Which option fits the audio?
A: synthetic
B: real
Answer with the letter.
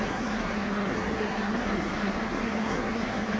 A